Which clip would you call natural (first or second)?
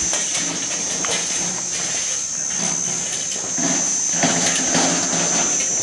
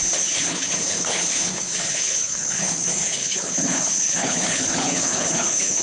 first